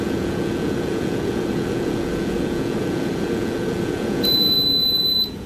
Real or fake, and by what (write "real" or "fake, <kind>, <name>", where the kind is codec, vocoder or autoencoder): fake, vocoder, Vocos